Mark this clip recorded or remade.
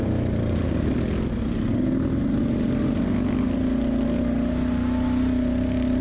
recorded